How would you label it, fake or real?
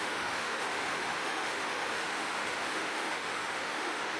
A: fake